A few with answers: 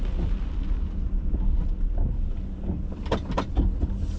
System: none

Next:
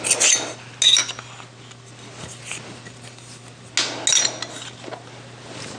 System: none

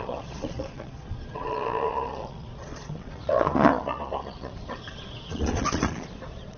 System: vocoder, Vocos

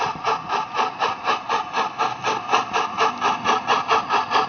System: none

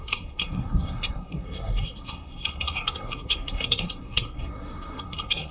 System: codec, SNAC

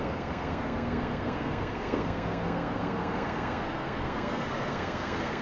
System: codec, SNAC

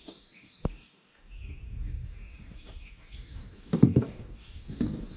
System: codec, DAC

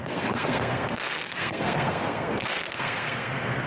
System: codec, SNAC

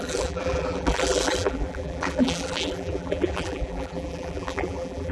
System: vocoder, BigVGAN v2